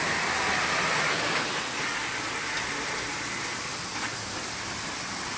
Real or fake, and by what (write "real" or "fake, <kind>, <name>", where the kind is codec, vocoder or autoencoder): real